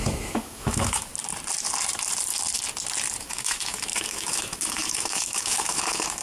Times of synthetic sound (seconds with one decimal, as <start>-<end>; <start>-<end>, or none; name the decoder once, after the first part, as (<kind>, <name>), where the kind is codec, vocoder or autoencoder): 0.0-1.1 (autoencoder, DAC-VAE); 3.2-6.2